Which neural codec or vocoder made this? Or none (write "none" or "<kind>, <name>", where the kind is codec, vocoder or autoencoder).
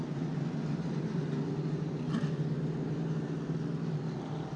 none